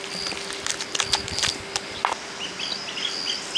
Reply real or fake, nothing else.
real